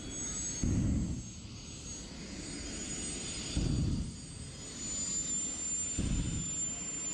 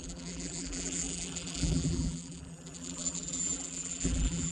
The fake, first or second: second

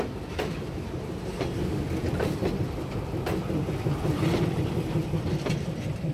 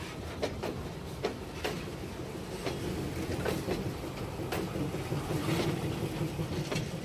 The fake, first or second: first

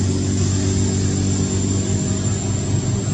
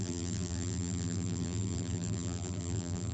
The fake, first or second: second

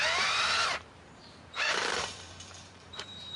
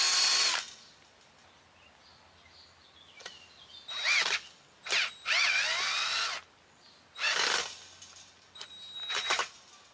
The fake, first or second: first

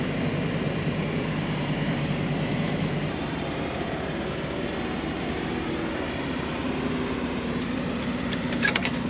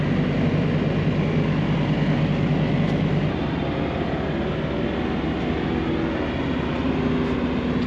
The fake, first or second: first